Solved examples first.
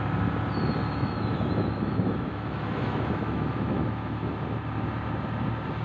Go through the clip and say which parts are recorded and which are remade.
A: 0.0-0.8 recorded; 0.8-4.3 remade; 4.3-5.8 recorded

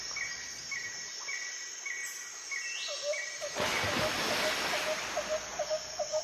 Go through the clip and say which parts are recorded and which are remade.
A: 0.0-6.2 recorded